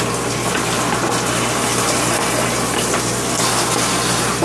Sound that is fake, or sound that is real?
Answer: real